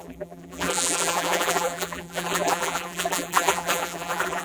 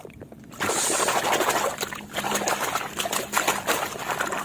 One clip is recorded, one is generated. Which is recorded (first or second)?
second